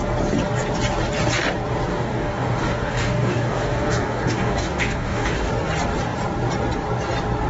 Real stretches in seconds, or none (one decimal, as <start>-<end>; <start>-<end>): 0.0-1.9; 5.5-7.5

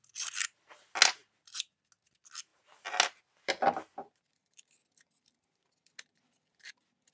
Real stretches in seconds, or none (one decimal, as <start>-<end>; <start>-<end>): 0.0-7.1

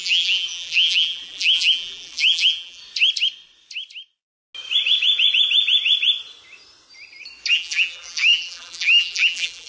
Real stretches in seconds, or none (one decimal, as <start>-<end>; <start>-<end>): 2.8-7.5

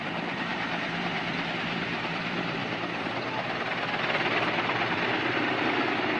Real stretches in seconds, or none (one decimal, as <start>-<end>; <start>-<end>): 0.5-1.5; 2.6-4.0

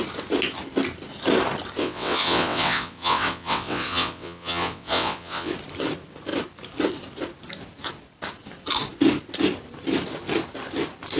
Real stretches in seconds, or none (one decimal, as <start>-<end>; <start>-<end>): 0.0-1.8; 5.5-11.2

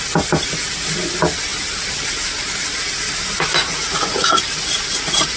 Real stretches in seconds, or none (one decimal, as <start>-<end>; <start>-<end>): 0.0-3.6; 4.4-5.4

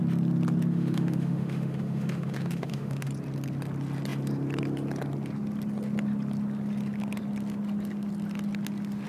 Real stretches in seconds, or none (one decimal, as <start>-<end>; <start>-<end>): 0.0-0.7; 3.1-9.1

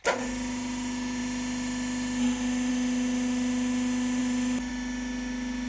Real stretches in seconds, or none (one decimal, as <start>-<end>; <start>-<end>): 0.0-4.2; 4.7-5.7